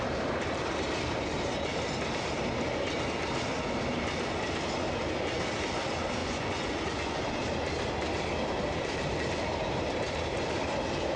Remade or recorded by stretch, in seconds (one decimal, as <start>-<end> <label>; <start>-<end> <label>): 0.0-6.2 recorded; 6.2-7.4 remade; 7.4-11.2 recorded